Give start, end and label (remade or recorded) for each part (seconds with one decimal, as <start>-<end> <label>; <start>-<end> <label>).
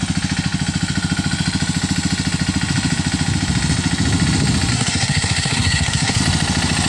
0.0-4.7 recorded; 4.7-6.2 remade; 6.2-6.9 recorded